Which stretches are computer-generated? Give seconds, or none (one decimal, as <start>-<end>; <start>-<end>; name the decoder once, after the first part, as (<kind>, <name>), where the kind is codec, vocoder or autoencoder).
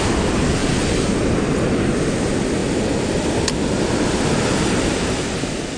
none